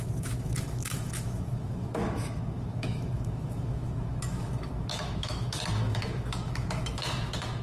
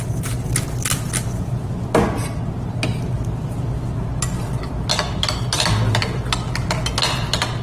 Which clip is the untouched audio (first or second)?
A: second